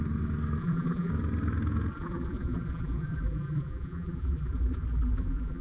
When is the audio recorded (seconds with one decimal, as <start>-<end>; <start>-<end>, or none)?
0.0-0.6; 1.1-1.9